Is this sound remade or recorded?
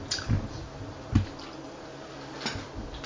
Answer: recorded